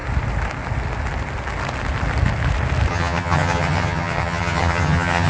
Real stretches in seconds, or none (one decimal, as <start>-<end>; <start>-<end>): 0.0-2.9